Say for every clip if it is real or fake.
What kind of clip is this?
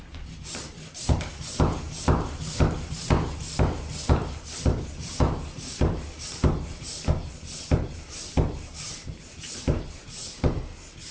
fake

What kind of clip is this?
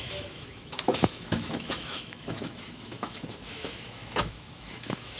fake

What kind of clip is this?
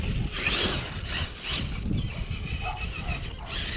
real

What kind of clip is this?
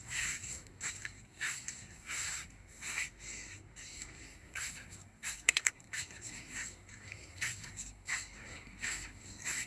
fake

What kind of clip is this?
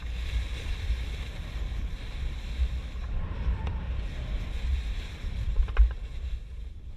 fake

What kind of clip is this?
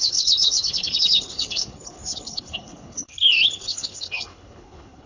fake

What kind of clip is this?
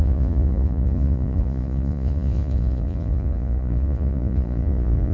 fake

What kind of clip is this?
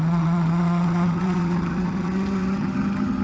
fake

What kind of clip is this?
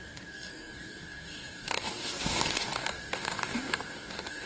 fake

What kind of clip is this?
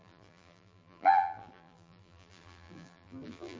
fake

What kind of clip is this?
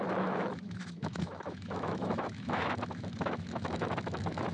fake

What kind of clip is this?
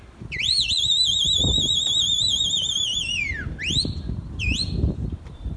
fake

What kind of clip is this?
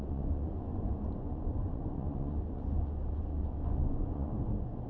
fake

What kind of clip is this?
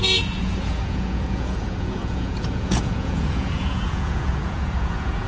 fake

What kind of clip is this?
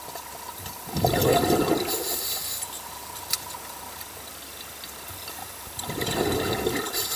real